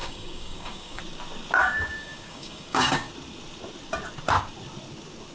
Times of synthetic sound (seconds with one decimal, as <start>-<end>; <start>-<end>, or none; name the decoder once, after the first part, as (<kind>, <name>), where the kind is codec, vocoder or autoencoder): 0.0-1.0 (codec, DAC); 1.6-3.1